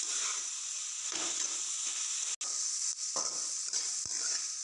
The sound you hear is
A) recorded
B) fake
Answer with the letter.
A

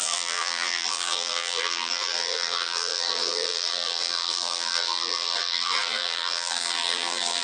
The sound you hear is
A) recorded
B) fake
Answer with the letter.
B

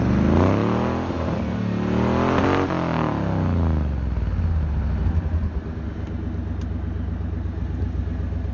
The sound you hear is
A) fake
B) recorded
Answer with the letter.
B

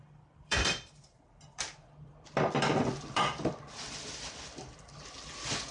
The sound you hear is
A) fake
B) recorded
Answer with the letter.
A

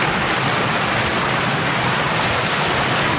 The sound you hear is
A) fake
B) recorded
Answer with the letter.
B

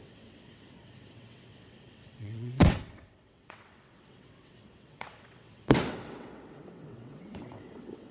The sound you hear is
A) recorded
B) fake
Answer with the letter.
B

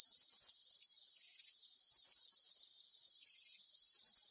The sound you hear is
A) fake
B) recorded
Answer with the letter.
B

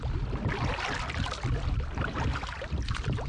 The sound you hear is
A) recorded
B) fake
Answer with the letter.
A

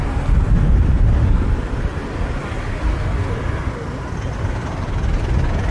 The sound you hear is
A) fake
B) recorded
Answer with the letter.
B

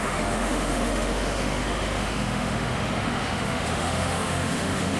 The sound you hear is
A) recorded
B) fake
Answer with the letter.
B